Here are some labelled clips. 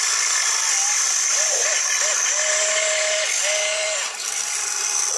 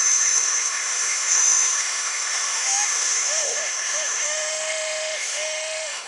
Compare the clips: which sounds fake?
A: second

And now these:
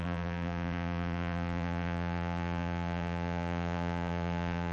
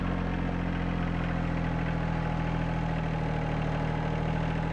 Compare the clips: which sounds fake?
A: first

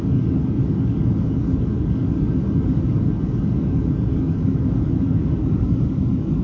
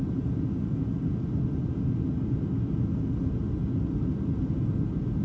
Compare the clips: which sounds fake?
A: first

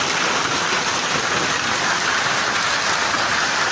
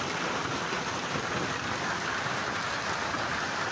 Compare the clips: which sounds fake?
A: second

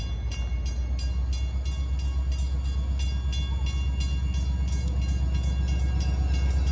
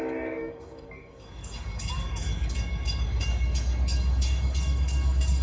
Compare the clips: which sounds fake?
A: second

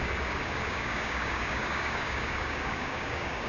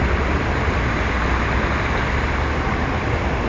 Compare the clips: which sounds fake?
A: first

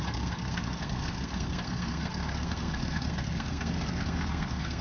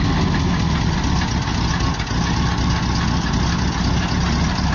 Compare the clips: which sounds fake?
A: first